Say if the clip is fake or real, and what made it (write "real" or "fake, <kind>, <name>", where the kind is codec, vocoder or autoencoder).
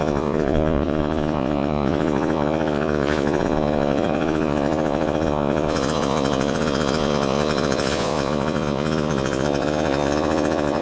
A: fake, vocoder, Vocos